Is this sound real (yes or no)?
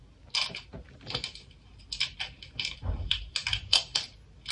yes